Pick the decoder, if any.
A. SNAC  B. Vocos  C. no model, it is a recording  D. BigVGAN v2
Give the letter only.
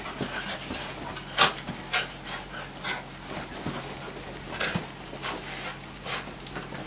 C